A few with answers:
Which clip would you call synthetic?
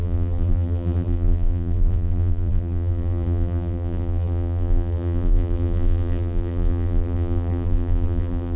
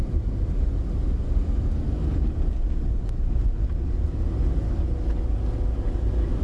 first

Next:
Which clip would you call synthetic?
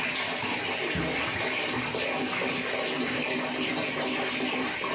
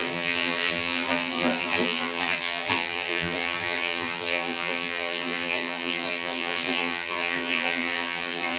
second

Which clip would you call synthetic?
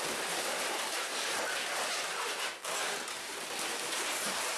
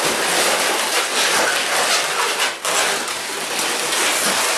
first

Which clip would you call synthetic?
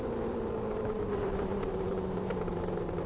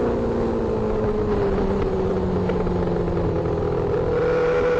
first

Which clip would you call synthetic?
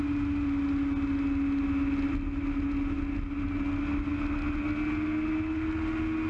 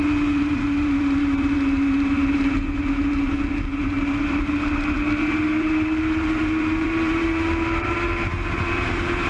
second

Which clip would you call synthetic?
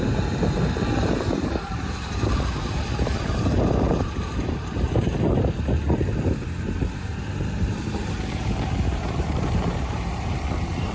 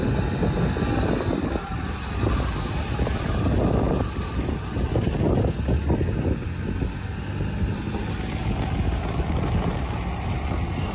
first